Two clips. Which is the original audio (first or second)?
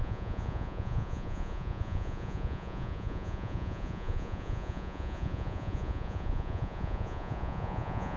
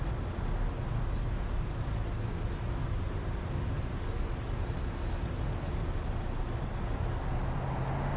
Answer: second